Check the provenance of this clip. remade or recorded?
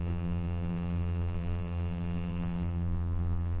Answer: remade